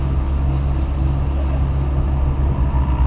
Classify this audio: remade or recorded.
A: recorded